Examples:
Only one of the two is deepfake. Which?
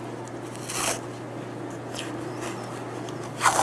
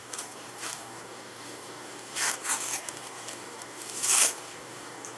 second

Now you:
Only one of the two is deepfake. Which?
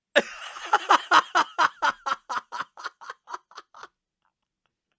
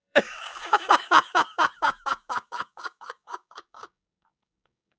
second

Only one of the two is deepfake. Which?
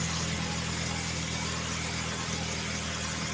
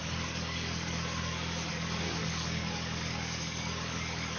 second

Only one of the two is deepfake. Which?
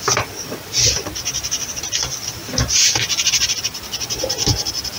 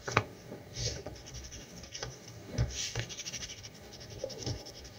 second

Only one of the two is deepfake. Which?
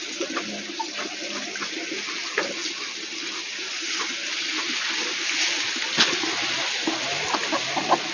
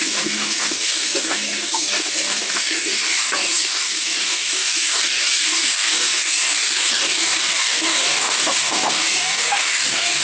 second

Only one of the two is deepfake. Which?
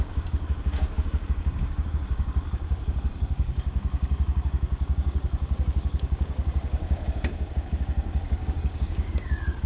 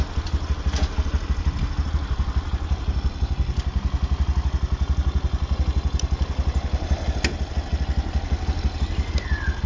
first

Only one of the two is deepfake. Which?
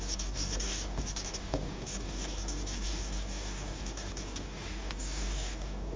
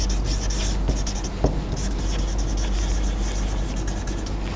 first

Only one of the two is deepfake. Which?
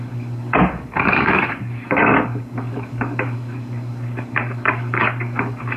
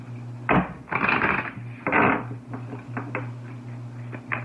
first